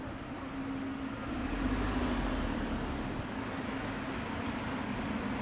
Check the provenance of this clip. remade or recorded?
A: recorded